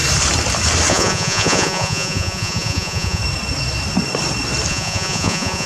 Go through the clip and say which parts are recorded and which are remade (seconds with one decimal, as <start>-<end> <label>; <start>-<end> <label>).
0.0-0.9 recorded; 0.9-3.2 remade; 3.2-4.7 recorded; 4.7-5.7 remade